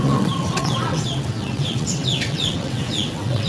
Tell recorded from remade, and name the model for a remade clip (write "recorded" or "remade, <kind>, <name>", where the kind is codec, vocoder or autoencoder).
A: remade, vocoder, WaveNeXt